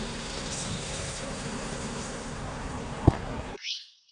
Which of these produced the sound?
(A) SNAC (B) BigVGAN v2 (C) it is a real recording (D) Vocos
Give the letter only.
A